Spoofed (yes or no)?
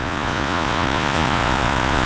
yes